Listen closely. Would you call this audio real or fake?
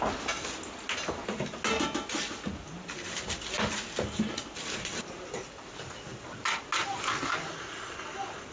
real